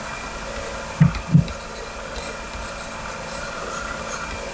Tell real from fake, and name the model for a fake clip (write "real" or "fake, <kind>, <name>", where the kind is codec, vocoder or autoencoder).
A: real